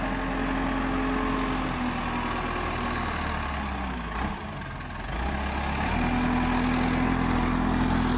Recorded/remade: recorded